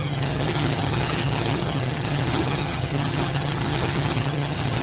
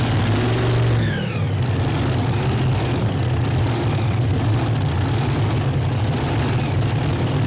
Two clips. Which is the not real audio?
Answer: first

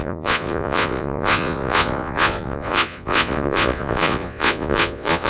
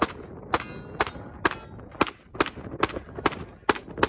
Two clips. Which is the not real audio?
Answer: first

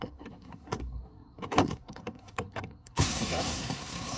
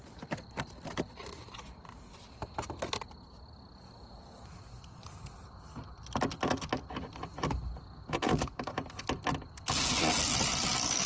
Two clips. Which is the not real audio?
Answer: first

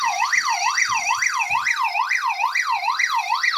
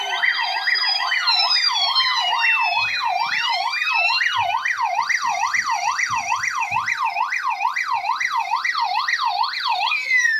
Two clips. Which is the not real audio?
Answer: second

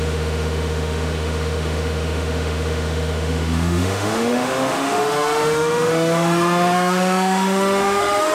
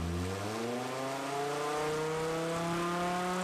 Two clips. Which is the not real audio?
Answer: first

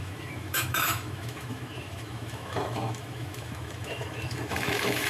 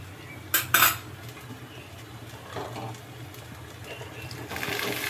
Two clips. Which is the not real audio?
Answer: first